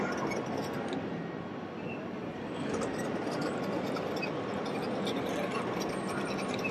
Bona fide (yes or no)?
yes